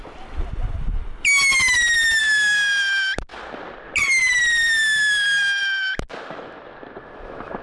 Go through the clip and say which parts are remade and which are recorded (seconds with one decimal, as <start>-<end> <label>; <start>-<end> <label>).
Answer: 0.0-7.6 recorded